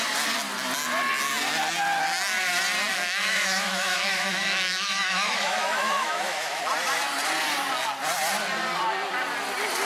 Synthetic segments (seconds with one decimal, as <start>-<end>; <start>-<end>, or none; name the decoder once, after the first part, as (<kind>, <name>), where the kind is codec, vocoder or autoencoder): 2.9-6.6 (autoencoder, DAC-VAE)